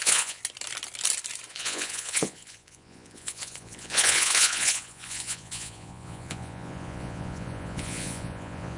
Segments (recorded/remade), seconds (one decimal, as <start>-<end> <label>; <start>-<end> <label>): 0.0-0.4 remade; 0.4-1.5 recorded; 1.5-8.8 remade

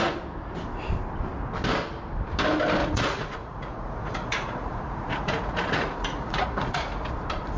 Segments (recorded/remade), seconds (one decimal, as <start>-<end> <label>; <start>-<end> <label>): 0.0-2.8 recorded; 2.8-7.1 remade; 7.1-7.6 recorded